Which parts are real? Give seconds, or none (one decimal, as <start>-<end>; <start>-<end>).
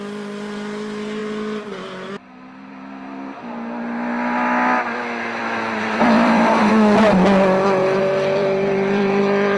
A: 0.0-5.4; 6.7-7.8; 9.2-9.6